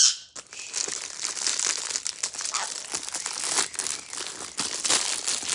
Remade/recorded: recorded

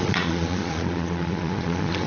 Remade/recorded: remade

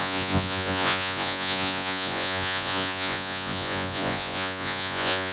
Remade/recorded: remade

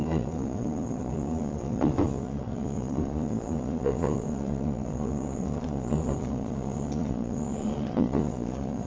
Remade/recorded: remade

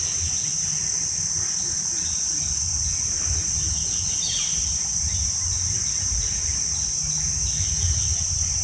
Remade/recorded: recorded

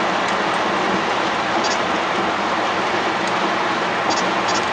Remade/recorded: recorded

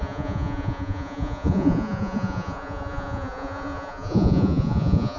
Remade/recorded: remade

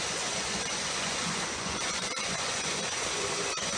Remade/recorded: remade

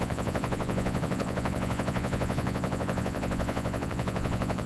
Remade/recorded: remade